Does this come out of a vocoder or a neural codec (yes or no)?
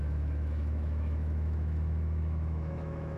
yes